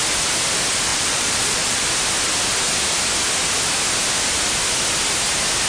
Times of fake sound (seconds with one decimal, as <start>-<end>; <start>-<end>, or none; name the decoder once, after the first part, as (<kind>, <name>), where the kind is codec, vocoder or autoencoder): 0.9-1.8 (vocoder, Vocos)

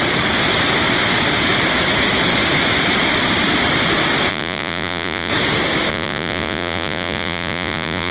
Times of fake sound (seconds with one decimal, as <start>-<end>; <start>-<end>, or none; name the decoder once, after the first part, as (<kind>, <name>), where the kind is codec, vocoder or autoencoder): 4.3-5.3 (vocoder, Vocos); 5.9-8.1

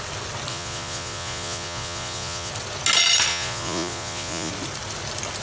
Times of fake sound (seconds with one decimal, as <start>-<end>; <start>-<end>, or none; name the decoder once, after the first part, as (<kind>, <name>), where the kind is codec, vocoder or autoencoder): 0.5-2.5 (vocoder, Vocos); 3.3-4.5

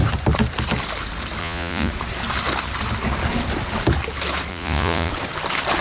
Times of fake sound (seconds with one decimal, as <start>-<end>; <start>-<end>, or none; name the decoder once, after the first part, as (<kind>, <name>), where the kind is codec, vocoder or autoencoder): 1.4-1.9 (vocoder, Vocos); 4.5-5.1

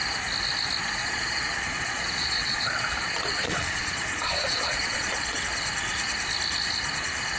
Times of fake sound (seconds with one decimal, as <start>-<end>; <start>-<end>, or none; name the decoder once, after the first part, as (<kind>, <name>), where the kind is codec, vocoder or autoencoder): 1.0-5.4 (vocoder, Vocos)

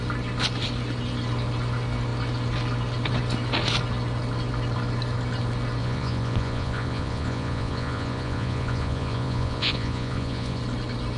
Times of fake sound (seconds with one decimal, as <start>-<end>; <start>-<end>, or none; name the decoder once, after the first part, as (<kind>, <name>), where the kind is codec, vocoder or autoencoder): 5.8-10.6 (vocoder, Vocos)